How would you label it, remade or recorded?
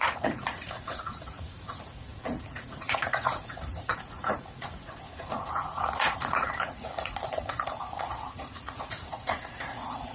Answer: remade